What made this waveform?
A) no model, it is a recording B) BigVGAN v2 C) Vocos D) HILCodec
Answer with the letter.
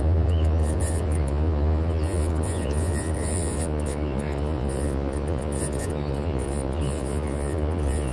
C